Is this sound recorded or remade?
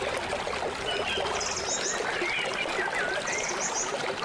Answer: recorded